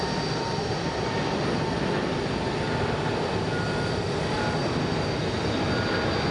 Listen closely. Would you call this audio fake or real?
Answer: real